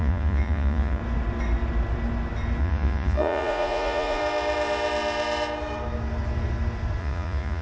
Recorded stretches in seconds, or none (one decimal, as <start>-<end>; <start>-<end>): 1.0-2.6; 4.2-7.0